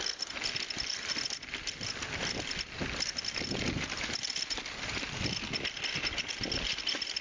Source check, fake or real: real